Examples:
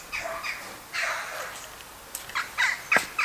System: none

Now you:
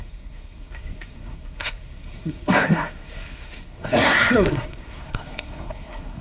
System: codec, SNAC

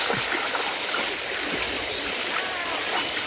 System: none